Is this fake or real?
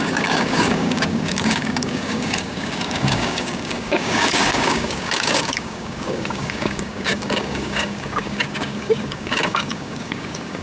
fake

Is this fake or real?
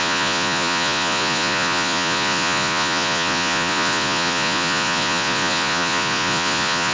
fake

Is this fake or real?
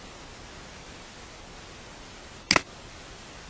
real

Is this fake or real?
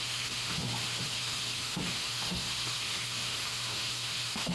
fake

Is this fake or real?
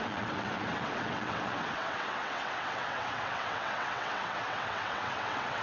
fake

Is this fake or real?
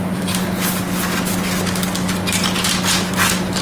real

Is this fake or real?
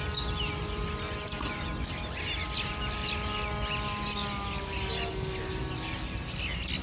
real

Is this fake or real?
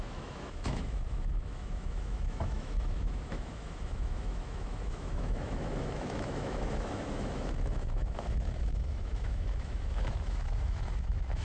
fake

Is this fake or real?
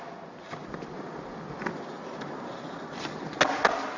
real